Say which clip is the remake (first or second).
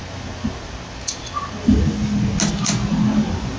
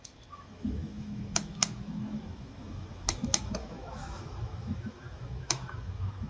second